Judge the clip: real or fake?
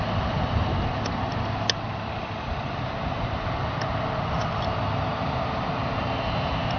real